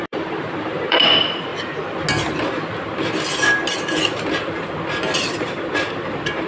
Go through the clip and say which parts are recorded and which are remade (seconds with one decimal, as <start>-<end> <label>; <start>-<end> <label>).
0.0-1.5 remade; 1.5-5.2 recorded; 5.2-6.5 remade